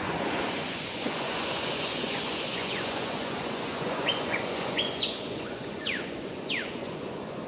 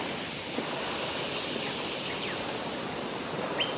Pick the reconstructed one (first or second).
first